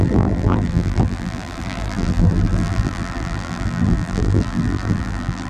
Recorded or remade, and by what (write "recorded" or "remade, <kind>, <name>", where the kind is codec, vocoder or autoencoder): remade, vocoder, BigVGAN v2